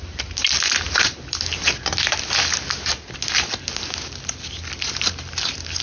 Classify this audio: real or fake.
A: real